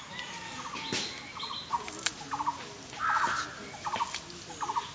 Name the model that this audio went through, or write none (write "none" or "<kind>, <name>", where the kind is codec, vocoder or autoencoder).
none